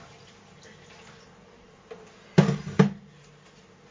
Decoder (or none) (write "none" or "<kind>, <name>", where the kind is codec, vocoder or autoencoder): none